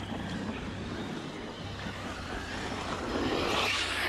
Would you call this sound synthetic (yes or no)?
no